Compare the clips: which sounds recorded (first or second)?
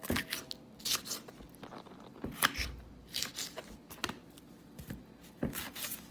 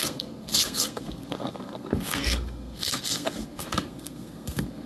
first